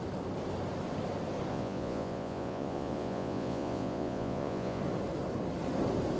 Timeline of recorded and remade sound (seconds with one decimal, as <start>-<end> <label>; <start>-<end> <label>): 0.0-1.5 recorded; 1.5-4.8 remade; 4.8-6.2 recorded